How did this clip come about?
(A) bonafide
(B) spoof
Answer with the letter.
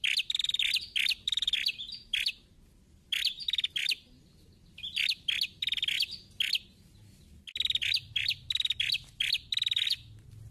A